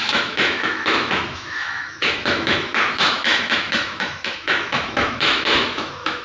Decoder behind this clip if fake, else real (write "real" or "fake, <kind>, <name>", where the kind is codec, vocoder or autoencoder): fake, autoencoder, DAC-VAE